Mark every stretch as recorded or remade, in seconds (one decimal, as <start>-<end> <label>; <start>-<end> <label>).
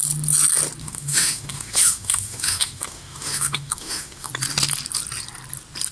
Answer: 0.0-0.8 recorded; 0.8-4.3 remade; 4.3-5.9 recorded